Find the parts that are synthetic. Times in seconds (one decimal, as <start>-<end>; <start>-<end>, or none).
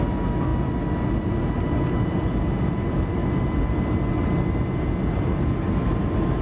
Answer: none